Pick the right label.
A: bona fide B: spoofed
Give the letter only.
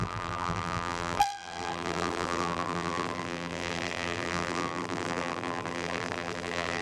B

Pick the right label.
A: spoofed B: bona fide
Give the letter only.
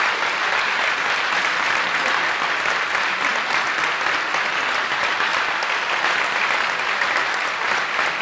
B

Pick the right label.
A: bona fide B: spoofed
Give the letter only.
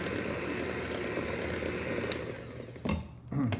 A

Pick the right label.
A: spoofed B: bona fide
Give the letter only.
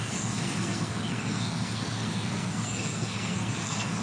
A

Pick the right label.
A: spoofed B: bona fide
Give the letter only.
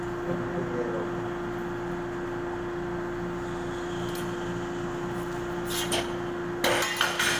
B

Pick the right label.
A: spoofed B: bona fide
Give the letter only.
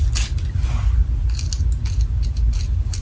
B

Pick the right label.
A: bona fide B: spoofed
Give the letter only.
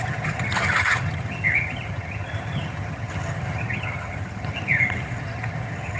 B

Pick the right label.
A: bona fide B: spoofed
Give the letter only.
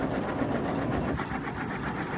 A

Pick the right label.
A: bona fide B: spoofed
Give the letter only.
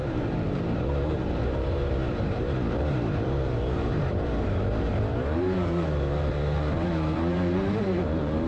B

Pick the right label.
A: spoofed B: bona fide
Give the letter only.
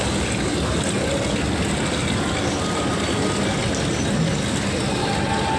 B